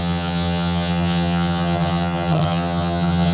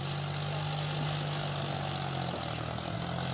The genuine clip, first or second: second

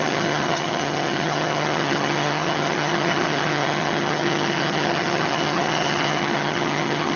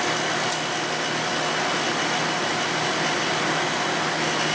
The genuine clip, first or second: second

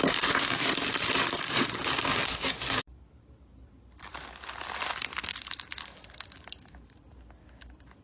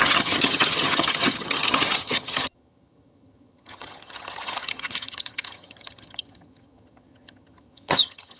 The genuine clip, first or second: first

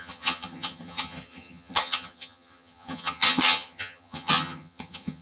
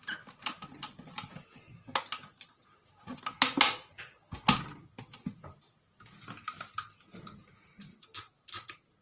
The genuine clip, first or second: second